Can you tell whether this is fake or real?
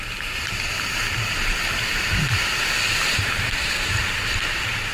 fake